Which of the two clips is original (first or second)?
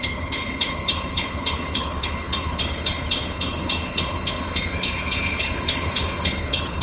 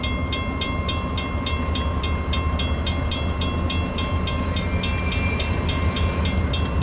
second